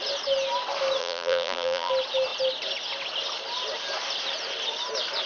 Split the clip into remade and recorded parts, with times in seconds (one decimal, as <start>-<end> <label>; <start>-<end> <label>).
0.0-1.0 recorded; 1.0-1.9 remade; 1.9-5.3 recorded